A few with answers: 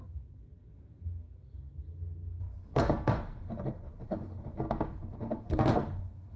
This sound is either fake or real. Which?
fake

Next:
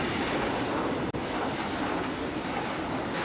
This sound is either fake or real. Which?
real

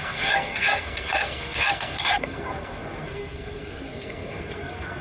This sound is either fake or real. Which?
fake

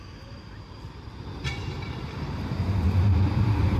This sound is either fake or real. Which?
fake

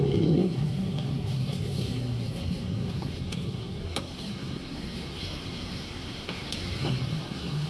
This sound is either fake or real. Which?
fake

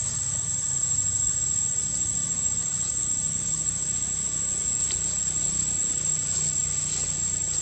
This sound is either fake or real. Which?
real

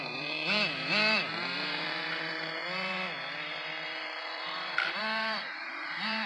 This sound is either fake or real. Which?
fake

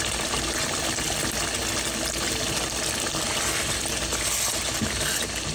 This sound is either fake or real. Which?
real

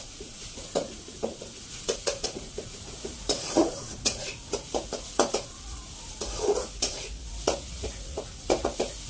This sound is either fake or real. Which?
fake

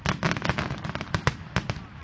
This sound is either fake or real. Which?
real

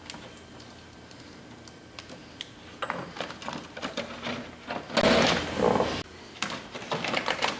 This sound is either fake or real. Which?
real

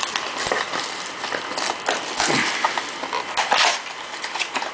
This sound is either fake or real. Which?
real